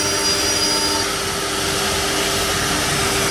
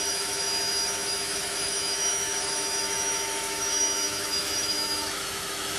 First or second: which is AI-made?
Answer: second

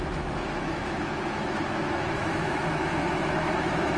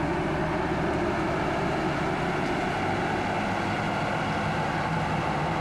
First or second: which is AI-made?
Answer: first